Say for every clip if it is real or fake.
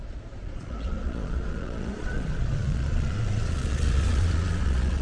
fake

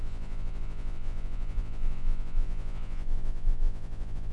fake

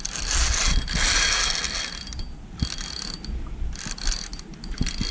real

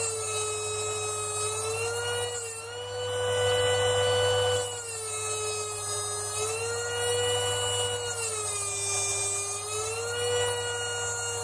real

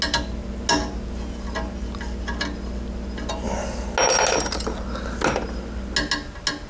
real